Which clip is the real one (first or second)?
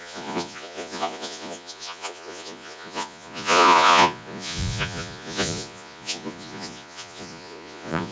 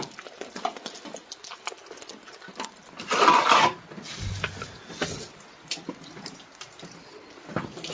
second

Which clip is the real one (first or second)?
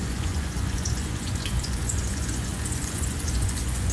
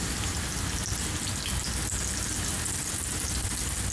second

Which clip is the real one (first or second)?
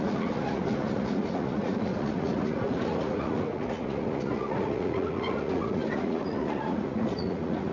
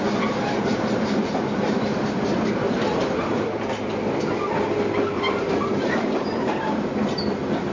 second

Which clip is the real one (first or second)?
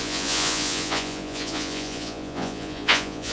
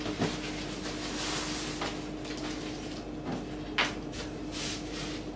second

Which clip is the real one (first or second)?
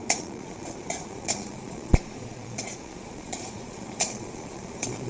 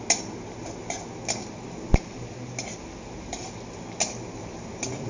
second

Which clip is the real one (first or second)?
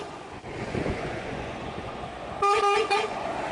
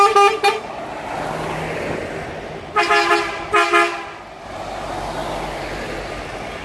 second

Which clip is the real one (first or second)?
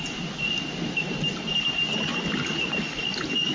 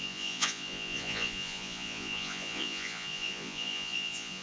first